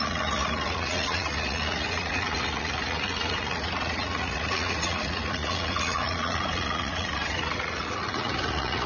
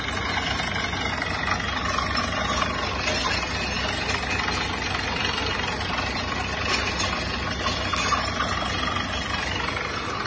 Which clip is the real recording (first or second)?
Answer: second